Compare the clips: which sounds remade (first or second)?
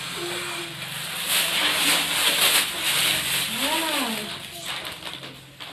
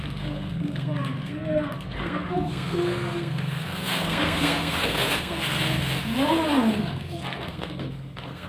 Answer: second